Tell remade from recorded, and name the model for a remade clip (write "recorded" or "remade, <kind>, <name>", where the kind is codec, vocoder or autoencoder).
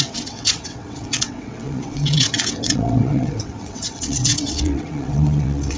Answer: remade, vocoder, WaveNeXt